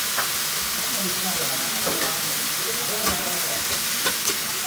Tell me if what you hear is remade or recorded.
recorded